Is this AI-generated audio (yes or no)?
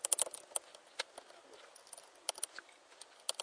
no